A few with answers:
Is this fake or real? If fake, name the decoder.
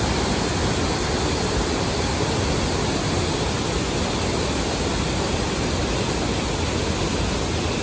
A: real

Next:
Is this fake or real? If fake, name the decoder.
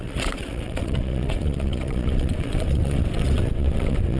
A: fake, vocoder, WaveNeXt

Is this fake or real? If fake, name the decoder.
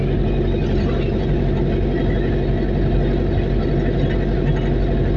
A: real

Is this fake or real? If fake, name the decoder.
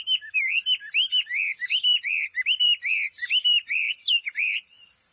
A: fake, vocoder, BigVGAN v2